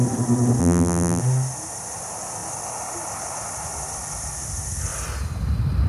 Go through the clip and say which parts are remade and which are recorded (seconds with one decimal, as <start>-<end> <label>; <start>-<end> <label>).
0.0-0.6 recorded; 0.6-1.2 remade; 1.2-5.9 recorded